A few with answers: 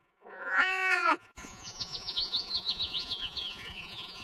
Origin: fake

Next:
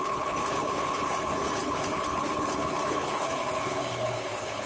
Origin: fake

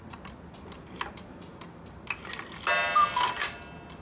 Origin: real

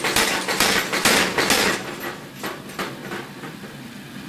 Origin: real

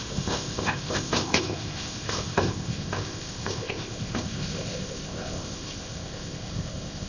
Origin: fake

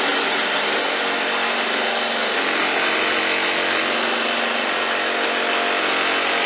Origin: real